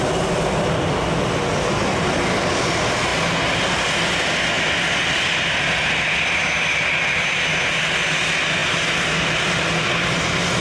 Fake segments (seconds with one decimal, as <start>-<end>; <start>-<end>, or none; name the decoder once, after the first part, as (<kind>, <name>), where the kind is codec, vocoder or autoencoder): none